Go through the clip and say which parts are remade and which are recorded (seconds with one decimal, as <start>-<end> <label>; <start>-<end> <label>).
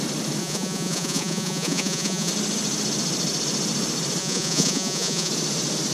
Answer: 0.0-0.4 recorded; 0.4-2.3 remade; 2.3-4.2 recorded; 4.2-5.3 remade; 5.3-5.9 recorded